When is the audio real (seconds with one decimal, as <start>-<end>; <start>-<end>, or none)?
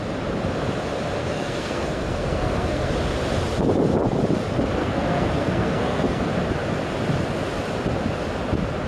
0.0-1.2; 2.9-4.8; 6.3-8.9